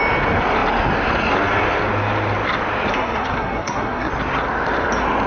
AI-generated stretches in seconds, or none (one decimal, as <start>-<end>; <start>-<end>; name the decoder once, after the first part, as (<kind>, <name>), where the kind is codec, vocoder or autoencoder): 2.9-4.1 (codec, SNAC)